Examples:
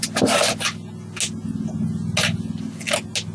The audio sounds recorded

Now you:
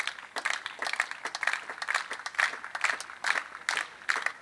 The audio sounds recorded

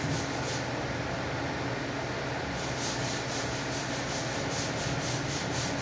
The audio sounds recorded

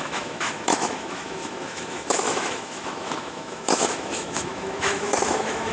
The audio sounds remade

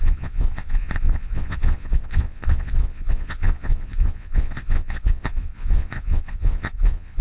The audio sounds remade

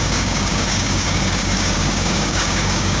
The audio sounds remade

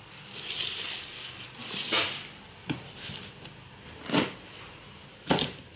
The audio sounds recorded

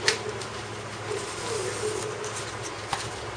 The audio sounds recorded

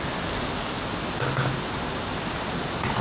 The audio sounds recorded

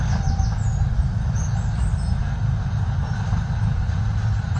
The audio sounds recorded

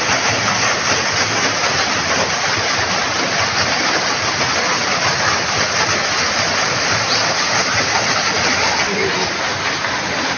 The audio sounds recorded